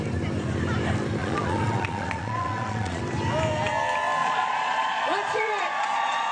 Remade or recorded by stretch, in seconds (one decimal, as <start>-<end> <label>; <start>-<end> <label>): 0.0-1.2 recorded; 1.2-3.0 remade; 3.0-4.2 recorded; 4.2-6.3 remade